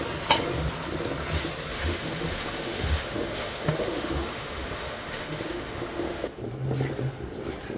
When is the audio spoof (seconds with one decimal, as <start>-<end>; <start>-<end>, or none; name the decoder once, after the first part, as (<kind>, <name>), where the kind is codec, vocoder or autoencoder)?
1.7-6.4 (autoencoder, DAC-VAE)